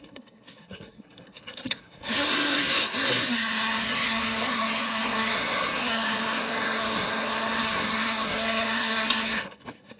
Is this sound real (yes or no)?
no